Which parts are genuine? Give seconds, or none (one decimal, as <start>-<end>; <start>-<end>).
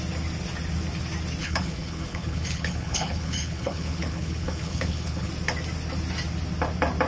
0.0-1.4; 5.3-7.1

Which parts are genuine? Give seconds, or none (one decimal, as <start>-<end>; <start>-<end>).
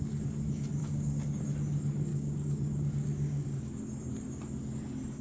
0.0-0.8; 1.4-2.1; 3.8-5.2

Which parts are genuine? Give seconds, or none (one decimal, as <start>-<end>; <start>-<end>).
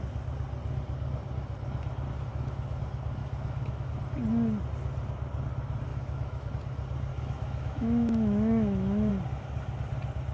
0.0-2.3; 2.8-3.2; 3.9-5.9; 6.5-7.1; 9.1-10.3